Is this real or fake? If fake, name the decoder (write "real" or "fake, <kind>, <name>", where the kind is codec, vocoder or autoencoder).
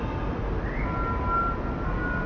real